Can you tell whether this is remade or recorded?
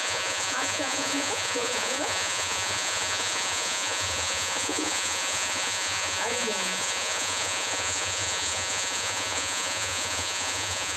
remade